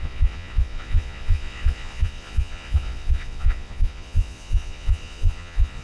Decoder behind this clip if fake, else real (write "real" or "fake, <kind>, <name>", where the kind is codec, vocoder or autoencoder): fake, vocoder, Vocos